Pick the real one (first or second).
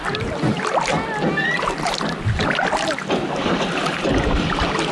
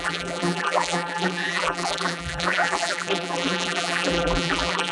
first